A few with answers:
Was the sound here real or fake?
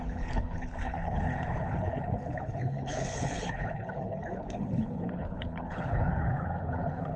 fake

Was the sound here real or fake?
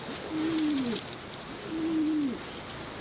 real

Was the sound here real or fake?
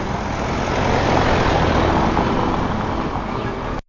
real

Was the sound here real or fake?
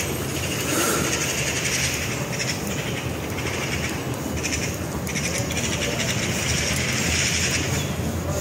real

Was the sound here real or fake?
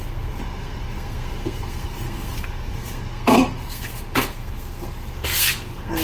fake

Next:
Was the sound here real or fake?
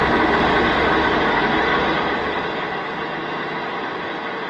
real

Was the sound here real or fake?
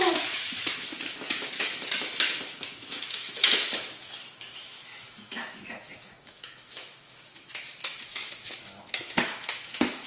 fake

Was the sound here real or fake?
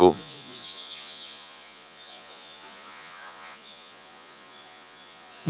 fake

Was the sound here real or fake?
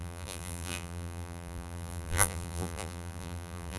fake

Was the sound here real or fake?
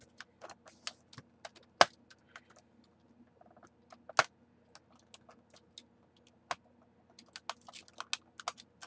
real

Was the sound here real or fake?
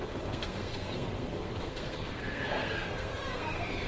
fake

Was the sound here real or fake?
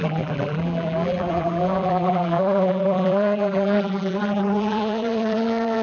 fake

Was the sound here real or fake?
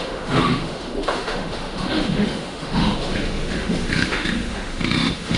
fake